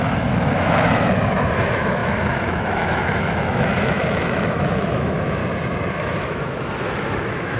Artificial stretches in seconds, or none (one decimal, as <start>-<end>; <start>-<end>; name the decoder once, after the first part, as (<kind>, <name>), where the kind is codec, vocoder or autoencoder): 0.0-5.4 (autoencoder, DAC-VAE); 5.9-7.6